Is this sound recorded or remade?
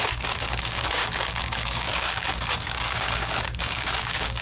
remade